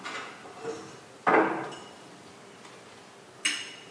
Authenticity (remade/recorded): recorded